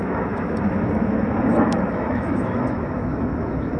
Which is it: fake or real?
fake